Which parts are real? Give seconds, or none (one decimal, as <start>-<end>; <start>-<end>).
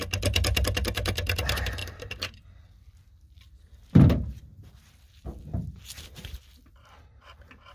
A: 0.0-1.8; 6.4-7.7